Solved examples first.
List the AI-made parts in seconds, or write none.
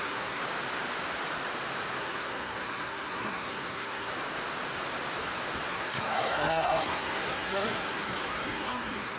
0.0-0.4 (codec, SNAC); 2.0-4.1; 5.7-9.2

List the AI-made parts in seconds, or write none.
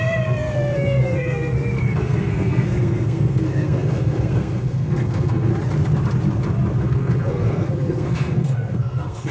0.0-5.5 (codec, SNAC); 6.8-9.3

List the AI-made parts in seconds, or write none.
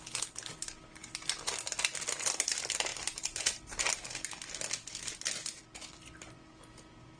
none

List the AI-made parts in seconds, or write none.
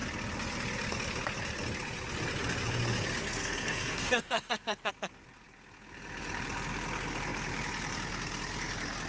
3.2-4.9 (codec, SNAC)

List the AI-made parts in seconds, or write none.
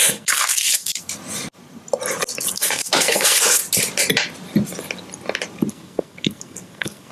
0.0-1.2 (codec, SNAC); 2.5-3.6; 5.7-7.1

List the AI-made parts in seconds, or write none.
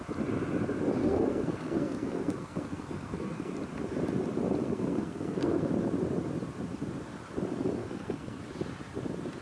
1.0-3.5 (codec, SNAC); 4.6-5.7; 7.8-8.4